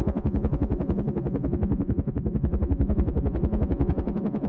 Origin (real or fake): fake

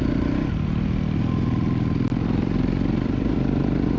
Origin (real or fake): real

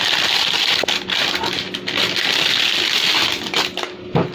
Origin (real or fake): real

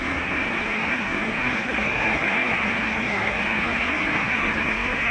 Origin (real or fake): fake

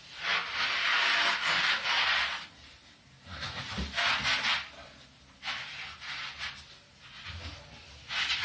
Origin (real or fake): real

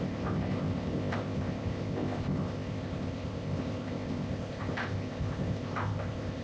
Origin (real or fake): fake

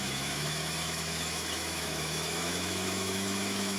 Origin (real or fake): fake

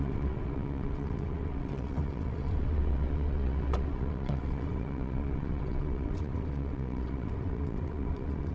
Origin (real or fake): fake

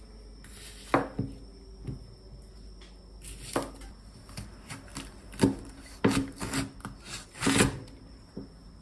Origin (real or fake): real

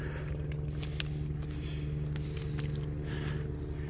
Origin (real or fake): real